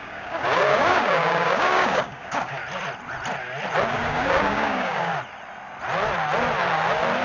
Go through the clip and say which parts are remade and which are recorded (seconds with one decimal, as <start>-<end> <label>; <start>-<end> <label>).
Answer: 0.0-2.6 remade; 2.6-3.9 recorded; 3.9-5.1 remade; 5.1-7.2 recorded